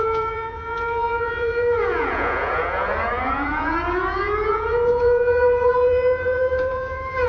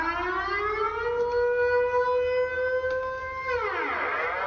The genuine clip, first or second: second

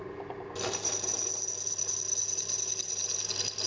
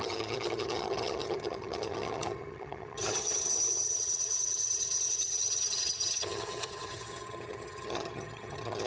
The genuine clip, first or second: first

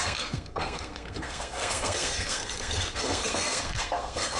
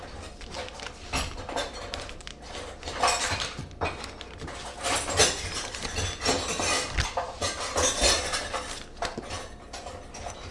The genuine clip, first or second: second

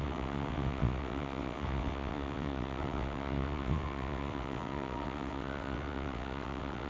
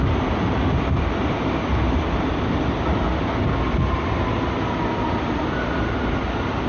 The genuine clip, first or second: second